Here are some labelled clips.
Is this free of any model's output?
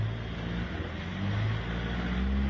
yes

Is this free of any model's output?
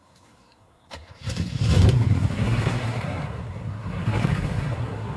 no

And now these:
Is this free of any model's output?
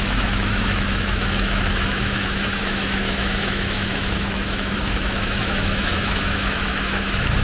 no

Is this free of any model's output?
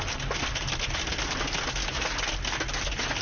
yes